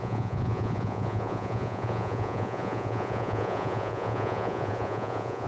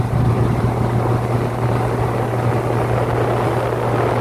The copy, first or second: first